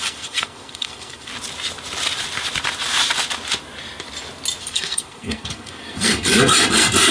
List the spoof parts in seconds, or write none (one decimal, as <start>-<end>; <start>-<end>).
0.0-1.3; 4.6-7.1